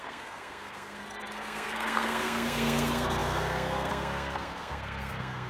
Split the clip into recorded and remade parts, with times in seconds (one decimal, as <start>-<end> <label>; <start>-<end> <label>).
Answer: 0.0-5.5 remade